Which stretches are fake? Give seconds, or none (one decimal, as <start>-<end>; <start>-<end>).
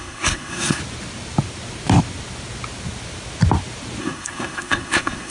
0.0-0.8; 4.0-5.3